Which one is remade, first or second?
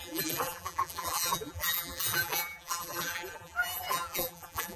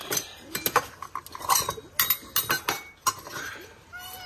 first